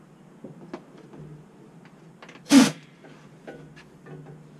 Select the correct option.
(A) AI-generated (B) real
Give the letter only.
B